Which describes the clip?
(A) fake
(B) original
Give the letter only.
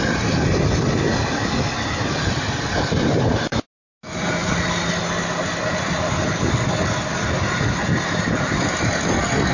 B